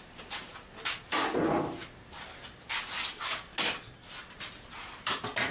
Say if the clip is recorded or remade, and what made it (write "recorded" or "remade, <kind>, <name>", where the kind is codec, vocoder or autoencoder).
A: recorded